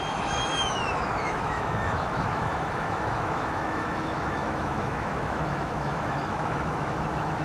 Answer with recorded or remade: remade